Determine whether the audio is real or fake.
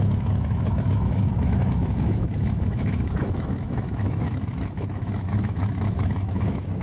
fake